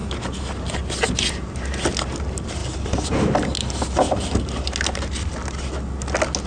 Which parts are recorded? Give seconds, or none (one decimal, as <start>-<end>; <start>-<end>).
0.0-6.5